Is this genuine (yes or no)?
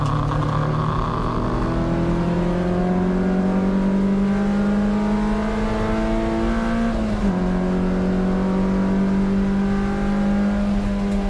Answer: yes